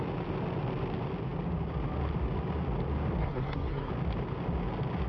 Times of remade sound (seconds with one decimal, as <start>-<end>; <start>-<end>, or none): 3.2-3.9